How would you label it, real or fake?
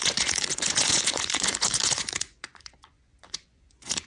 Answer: fake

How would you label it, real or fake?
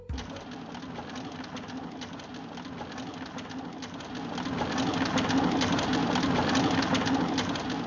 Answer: real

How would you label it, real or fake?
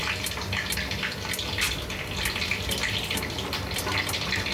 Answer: real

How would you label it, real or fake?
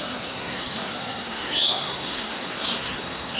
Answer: fake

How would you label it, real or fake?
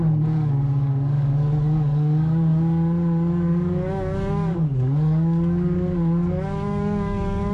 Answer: fake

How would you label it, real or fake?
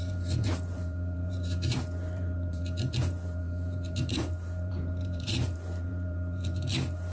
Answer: fake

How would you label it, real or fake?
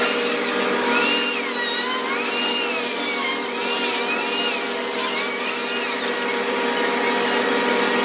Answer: real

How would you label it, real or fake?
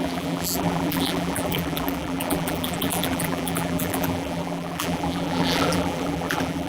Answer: fake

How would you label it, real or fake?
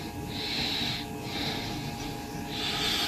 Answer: real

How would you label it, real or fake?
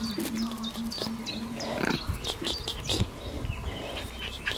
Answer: real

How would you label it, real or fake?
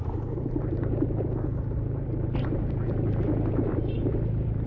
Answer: fake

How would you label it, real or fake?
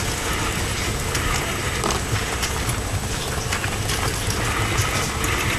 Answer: real